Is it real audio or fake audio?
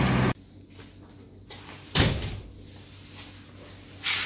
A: real